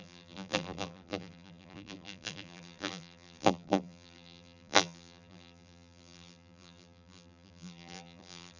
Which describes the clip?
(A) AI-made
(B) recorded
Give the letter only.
A